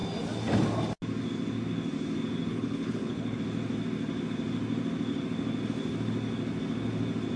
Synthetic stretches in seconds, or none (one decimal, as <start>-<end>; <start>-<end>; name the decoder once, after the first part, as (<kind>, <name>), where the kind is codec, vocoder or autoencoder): 2.5-3.4 (codec, HILCodec)